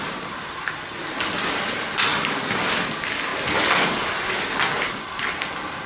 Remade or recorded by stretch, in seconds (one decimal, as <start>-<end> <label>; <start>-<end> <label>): 0.0-2.1 recorded; 2.1-2.7 remade; 2.7-5.9 recorded